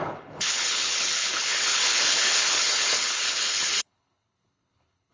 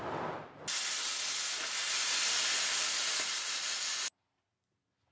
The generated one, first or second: first